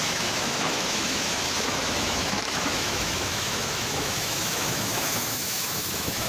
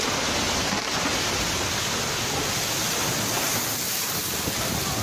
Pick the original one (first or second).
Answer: second